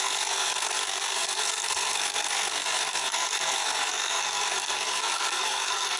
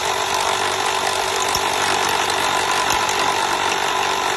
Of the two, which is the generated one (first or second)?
first